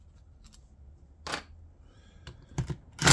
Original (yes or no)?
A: yes